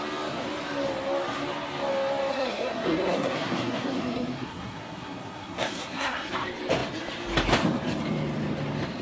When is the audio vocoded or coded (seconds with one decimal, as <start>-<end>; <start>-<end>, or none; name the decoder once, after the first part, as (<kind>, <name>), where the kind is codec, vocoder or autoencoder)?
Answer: 2.3-6.3 (codec, SNAC)